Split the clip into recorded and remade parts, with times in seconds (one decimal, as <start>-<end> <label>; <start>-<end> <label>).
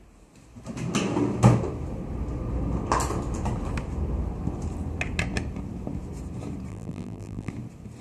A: 0.0-6.7 recorded; 6.7-7.5 remade; 7.5-8.0 recorded